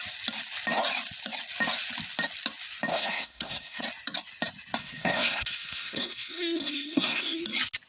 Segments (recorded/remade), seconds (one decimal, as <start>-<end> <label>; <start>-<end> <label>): 0.0-2.9 recorded; 2.9-3.8 remade; 3.8-4.8 recorded; 4.8-7.4 remade; 7.4-7.9 recorded